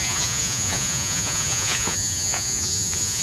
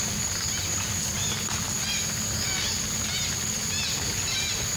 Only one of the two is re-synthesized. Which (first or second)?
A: first